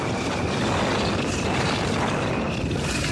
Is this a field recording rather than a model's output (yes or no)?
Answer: yes